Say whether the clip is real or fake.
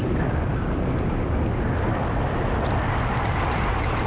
real